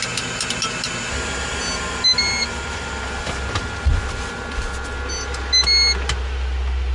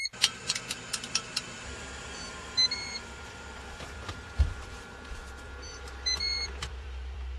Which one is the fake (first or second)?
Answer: second